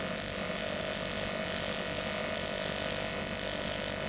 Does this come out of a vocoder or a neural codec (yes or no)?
no